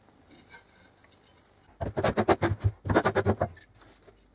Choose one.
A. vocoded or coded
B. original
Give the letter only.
B